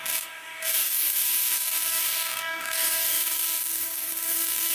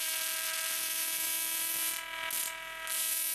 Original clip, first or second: second